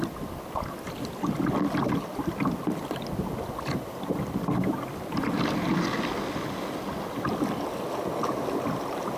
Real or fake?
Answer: real